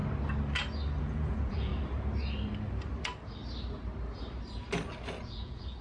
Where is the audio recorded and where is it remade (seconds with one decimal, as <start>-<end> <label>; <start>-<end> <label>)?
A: 0.0-1.0 recorded; 1.0-1.7 remade; 1.7-5.2 recorded; 5.2-5.8 remade

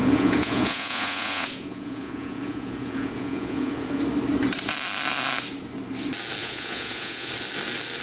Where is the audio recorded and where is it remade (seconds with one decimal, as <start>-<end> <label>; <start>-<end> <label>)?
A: 0.0-4.0 remade; 4.0-6.4 recorded; 6.4-7.3 remade; 7.3-8.0 recorded

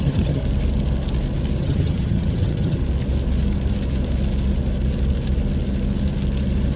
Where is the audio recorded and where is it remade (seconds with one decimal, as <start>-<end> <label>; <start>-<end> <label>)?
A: 0.0-0.4 remade; 0.4-1.6 recorded; 1.6-2.8 remade; 2.8-6.8 recorded

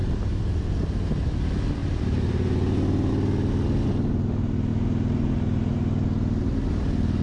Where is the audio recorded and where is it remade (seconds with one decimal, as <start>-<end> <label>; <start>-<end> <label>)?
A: 0.0-7.2 recorded

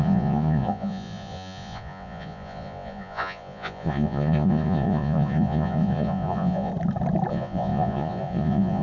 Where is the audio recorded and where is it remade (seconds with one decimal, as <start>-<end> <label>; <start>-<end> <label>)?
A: 0.0-6.7 remade; 6.7-7.3 recorded; 7.3-8.8 remade

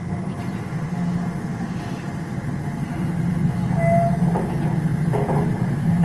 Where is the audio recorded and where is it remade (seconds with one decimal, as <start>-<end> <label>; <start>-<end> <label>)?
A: 0.0-6.0 recorded

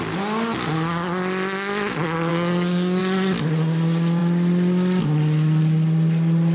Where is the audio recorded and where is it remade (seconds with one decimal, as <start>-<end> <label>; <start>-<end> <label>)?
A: 0.0-2.3 recorded; 2.3-3.0 remade; 3.0-6.5 recorded

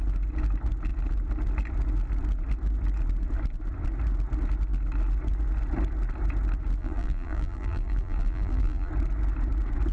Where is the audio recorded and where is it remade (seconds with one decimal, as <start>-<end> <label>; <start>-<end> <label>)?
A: 0.0-6.8 recorded; 6.8-8.9 remade; 8.9-9.9 recorded